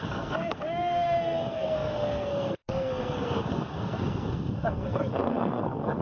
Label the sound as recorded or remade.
remade